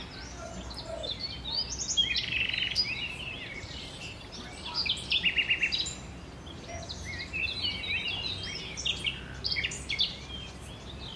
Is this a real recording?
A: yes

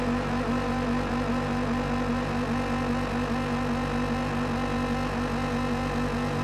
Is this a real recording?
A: yes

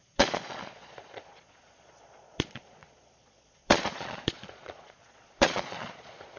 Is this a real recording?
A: no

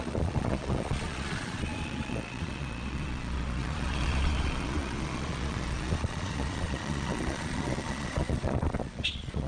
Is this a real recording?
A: no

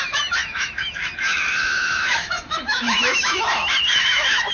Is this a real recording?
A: no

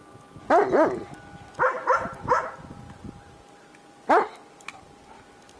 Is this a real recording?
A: yes